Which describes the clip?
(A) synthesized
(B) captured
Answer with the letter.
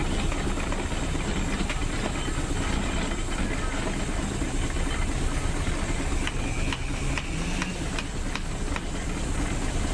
B